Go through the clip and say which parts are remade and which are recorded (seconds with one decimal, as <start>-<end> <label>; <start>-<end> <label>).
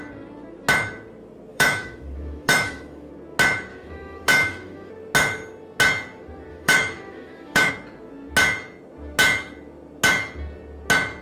0.0-1.5 recorded; 1.5-3.1 remade; 3.1-3.7 recorded; 3.7-4.9 remade; 4.9-6.5 recorded; 6.5-7.7 remade; 7.7-11.2 recorded